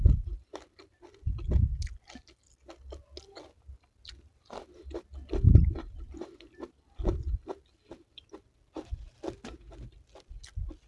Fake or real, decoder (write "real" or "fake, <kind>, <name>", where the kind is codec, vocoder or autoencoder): real